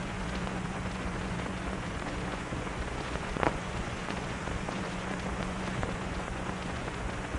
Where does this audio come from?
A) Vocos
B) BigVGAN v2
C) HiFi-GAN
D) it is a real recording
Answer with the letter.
A